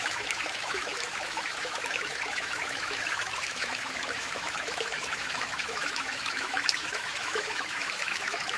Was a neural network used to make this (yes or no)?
yes